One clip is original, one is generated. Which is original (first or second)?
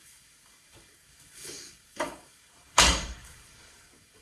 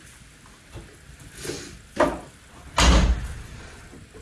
second